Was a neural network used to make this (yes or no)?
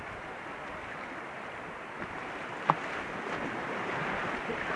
no